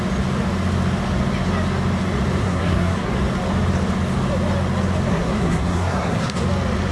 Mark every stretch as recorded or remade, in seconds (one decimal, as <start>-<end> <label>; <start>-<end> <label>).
0.0-2.4 recorded; 2.4-3.1 remade; 3.1-5.1 recorded; 5.1-6.4 remade; 6.4-6.9 recorded